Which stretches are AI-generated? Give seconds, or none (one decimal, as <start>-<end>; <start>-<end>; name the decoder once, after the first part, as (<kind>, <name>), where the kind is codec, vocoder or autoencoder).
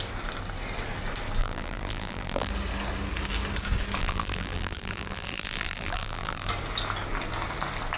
1.4-2.5 (vocoder, BigVGAN v2); 4.0-6.5